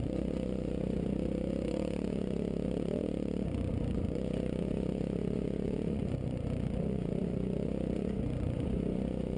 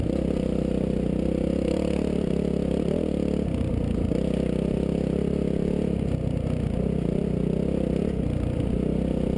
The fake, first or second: first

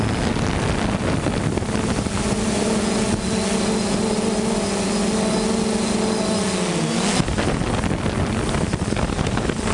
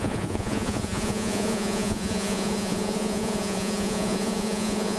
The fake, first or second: second